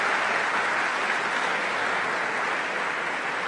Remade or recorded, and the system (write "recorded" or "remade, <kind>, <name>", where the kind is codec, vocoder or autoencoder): recorded